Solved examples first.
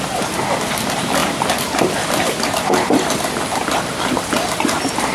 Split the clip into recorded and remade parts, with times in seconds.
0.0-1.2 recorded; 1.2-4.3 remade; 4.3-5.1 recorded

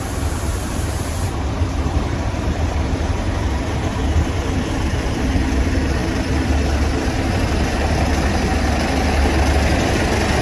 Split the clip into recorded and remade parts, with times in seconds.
0.0-6.0 remade; 6.0-10.4 recorded

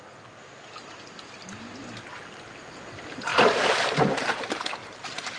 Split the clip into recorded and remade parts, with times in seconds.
0.0-3.3 recorded; 3.3-4.0 remade; 4.0-5.4 recorded

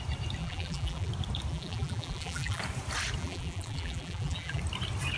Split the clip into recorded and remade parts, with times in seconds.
0.0-0.4 recorded; 0.4-1.1 remade; 1.1-1.5 recorded; 1.5-2.6 remade; 2.6-3.2 recorded; 3.2-4.6 remade; 4.6-5.2 recorded

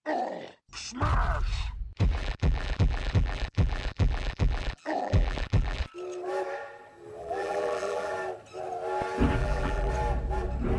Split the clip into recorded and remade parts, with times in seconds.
0.0-2.2 recorded; 2.2-5.8 remade; 5.8-7.2 recorded; 7.2-8.1 remade; 8.1-9.4 recorded; 9.4-9.9 remade; 9.9-10.8 recorded

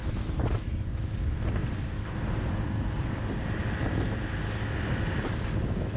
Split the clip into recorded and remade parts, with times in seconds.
0.0-1.6 recorded; 1.6-3.2 remade; 3.2-6.0 recorded

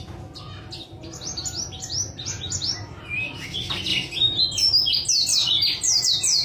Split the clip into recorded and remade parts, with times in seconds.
0.0-5.3 recorded; 5.3-6.0 remade; 6.0-6.4 recorded

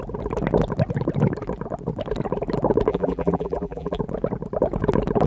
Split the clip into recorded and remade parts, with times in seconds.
0.0-2.9 recorded; 2.9-4.0 remade; 4.0-5.3 recorded